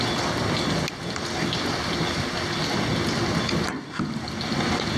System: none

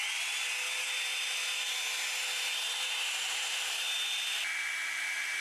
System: none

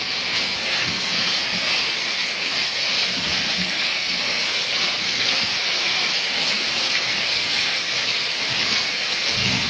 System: codec, SNAC